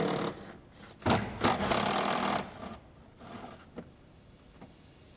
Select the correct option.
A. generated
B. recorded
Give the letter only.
B